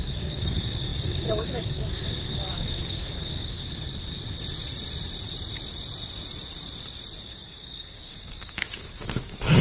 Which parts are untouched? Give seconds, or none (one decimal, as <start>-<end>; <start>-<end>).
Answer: 3.6-7.2